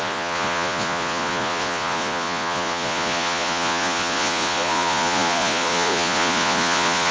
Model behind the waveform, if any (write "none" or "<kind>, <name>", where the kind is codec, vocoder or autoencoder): vocoder, Vocos